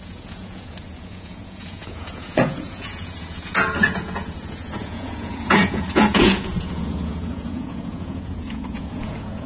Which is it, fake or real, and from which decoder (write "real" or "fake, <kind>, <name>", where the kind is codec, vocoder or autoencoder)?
fake, vocoder, Vocos